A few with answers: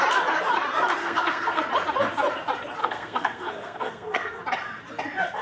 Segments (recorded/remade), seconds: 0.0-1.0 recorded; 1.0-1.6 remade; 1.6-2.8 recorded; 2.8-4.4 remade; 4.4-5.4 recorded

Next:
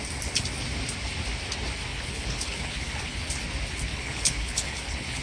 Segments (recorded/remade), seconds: 0.0-1.9 recorded; 1.9-3.3 remade; 3.3-3.9 recorded; 3.9-5.2 remade

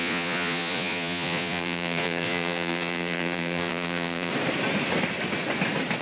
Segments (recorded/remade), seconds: 0.0-4.3 remade; 4.3-6.0 recorded

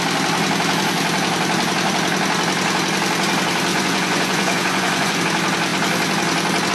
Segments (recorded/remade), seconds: 0.0-3.7 recorded; 3.7-5.2 remade; 5.2-6.7 recorded

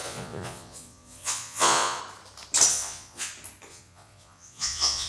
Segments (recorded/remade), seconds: 0.0-2.0 remade; 2.0-2.7 recorded; 2.7-3.3 remade; 3.3-3.7 recorded; 3.7-5.1 remade

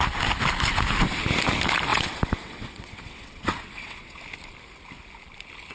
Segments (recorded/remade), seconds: 0.0-1.9 recorded; 1.9-4.2 remade; 4.2-5.7 recorded

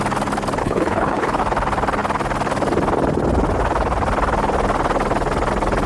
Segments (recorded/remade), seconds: 0.0-0.6 recorded; 0.6-1.4 remade; 1.4-5.9 recorded

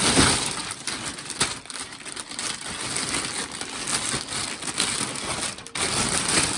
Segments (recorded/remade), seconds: 0.0-2.4 remade; 2.4-5.8 recorded; 5.8-6.6 remade